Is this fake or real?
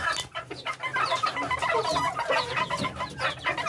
real